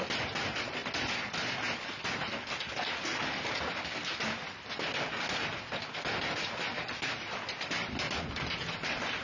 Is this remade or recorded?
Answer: recorded